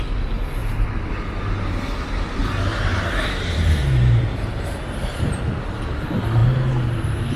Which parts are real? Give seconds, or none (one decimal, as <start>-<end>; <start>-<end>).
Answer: 0.0-2.7; 5.2-6.4